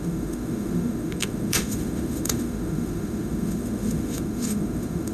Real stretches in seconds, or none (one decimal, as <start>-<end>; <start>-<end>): none